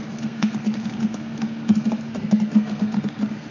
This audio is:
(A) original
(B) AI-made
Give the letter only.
B